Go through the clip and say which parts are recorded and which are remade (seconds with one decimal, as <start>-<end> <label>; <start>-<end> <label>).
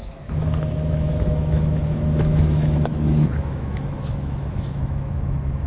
0.0-5.7 remade